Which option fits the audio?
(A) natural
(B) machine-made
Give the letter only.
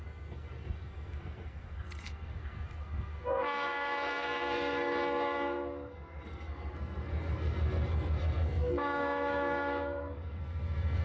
B